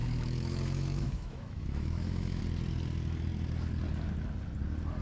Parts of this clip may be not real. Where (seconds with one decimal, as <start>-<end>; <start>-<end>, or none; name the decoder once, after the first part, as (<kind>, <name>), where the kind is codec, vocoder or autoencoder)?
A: 0.0-2.4 (autoencoder, DAC-VAE)